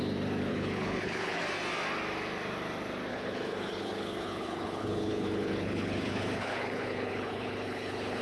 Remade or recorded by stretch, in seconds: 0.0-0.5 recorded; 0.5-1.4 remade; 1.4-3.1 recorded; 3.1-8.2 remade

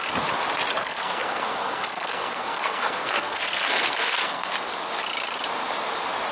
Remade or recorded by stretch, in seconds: 0.0-0.7 recorded; 0.7-4.5 remade; 4.5-6.3 recorded

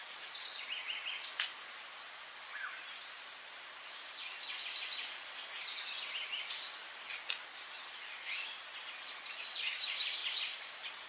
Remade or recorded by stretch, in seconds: 0.0-10.2 recorded; 10.2-11.1 remade

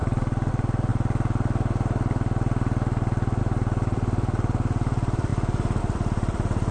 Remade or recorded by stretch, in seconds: 0.0-0.9 remade; 0.9-3.4 recorded; 3.4-5.3 remade; 5.3-5.8 recorded; 5.8-6.7 remade

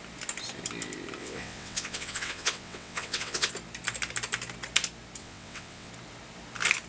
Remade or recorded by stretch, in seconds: 0.0-1.2 recorded; 1.2-3.5 remade; 3.5-5.2 recorded; 5.2-5.9 remade; 5.9-6.9 recorded

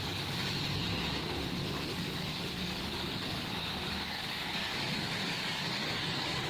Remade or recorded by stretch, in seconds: 0.0-0.4 remade; 0.4-1.0 recorded; 1.0-6.5 remade

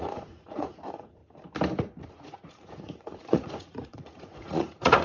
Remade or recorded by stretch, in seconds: 0.0-1.2 remade; 1.2-2.1 recorded; 2.1-5.0 remade